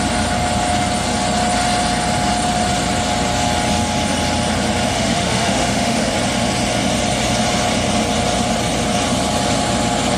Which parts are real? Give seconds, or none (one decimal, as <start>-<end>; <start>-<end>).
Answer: 0.0-4.9; 6.1-10.2